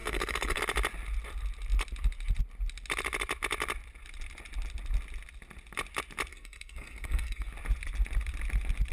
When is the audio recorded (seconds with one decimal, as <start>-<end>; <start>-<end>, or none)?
0.6-6.3; 7.5-8.9